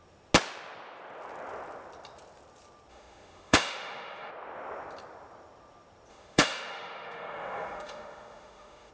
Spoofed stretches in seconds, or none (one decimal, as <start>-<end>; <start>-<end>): 2.9-4.3; 6.1-8.9